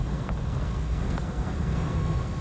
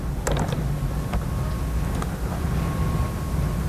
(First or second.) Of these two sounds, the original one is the second